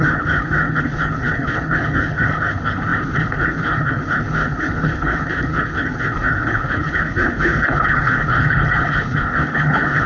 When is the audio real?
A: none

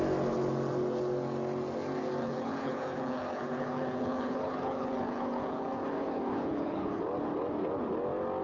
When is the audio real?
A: 0.0-2.2; 7.0-8.4

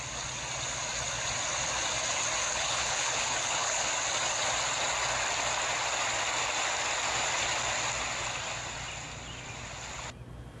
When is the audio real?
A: 0.0-2.4; 3.9-10.6

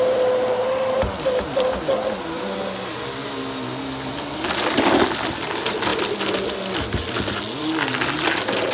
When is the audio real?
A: 0.0-8.7

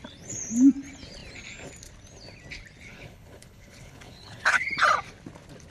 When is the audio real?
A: 0.0-2.9; 4.7-5.7